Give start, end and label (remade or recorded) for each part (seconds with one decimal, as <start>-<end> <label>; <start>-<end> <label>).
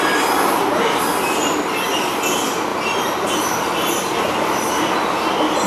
0.0-2.7 recorded; 2.7-5.7 remade